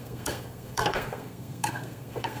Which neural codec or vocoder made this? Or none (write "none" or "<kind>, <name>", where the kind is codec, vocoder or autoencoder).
codec, SNAC